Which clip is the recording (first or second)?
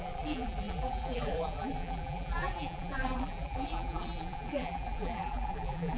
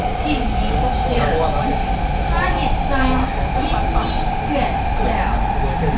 second